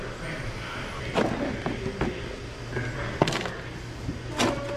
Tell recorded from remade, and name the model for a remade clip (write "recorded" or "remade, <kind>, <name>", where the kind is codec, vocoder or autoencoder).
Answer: recorded